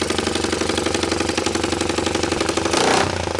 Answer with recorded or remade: recorded